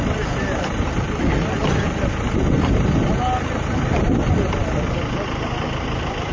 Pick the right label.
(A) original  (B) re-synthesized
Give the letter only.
B